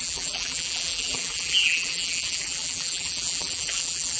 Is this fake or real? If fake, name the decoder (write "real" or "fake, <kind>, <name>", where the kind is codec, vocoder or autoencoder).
fake, vocoder, BigVGAN v2